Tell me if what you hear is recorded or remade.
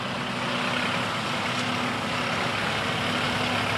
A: recorded